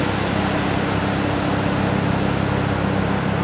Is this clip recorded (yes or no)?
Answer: yes